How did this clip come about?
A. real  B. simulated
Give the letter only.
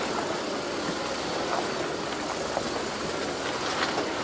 A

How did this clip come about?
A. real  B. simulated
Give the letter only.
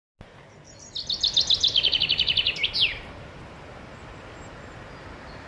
A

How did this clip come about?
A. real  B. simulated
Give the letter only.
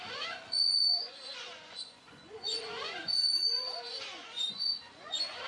B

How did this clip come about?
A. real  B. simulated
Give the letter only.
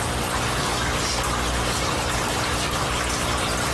A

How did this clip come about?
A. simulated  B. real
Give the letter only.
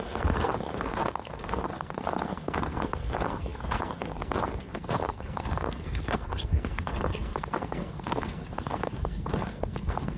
A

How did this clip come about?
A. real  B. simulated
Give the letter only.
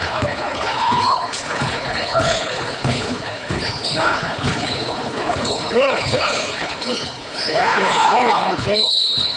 B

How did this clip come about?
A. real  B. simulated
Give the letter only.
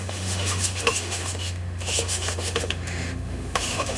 B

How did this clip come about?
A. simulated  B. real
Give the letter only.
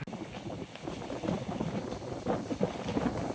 B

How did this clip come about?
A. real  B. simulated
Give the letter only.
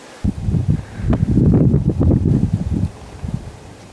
B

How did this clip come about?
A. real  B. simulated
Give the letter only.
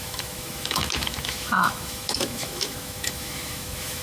B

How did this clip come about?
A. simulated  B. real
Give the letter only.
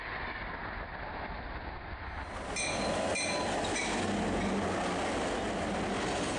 B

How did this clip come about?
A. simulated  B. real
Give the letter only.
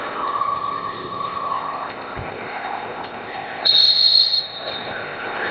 A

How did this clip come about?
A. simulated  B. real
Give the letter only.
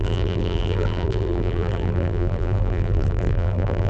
A